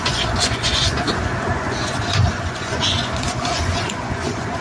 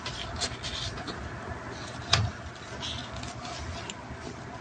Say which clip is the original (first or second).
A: second